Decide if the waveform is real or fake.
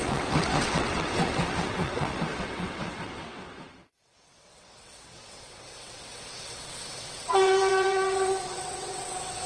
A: fake